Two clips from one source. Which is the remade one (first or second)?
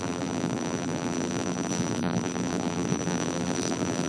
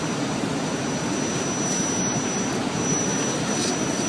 first